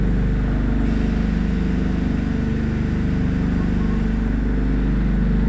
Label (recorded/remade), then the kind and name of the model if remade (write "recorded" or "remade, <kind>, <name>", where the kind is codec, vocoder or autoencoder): recorded